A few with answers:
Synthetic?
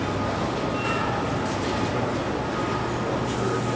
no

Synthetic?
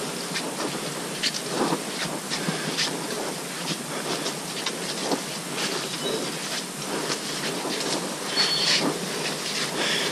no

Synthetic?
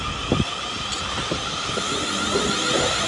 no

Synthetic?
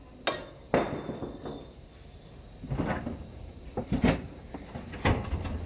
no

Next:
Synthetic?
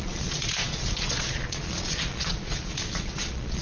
yes